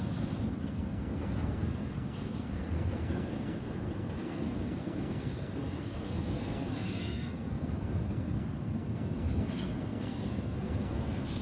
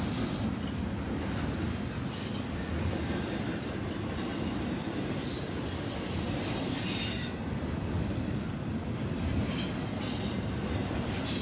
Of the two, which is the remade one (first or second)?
first